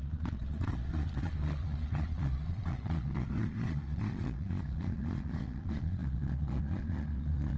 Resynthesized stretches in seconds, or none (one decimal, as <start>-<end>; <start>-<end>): 0.0-7.6